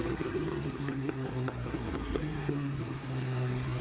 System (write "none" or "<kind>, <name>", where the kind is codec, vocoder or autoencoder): codec, SNAC